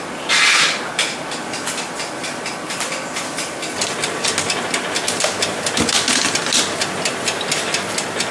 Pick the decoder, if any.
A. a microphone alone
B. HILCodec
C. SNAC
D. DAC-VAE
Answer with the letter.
A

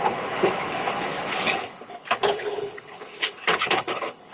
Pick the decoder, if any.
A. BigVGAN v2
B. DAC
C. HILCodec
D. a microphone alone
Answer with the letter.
C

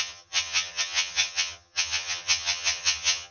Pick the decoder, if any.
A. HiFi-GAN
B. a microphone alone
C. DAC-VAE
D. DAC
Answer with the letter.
A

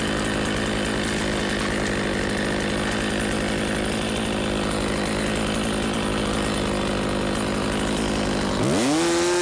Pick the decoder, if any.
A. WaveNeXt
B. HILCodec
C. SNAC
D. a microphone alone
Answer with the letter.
D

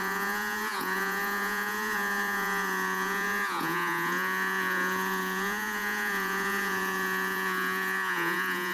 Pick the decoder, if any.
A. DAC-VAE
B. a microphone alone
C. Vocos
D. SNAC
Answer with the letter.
C